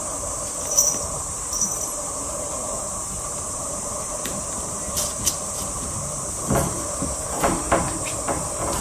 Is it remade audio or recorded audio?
remade